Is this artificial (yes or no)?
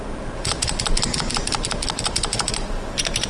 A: yes